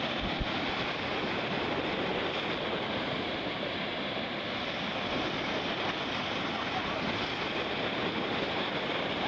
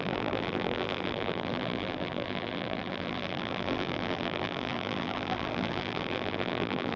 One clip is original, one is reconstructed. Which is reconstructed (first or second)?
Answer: second